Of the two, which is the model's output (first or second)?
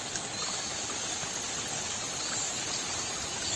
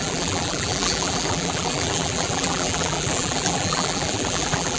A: second